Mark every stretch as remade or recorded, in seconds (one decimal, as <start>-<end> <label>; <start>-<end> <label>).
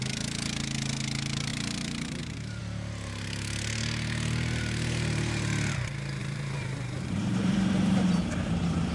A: 0.0-1.5 recorded; 1.5-2.2 remade; 2.2-6.2 recorded; 6.2-8.9 remade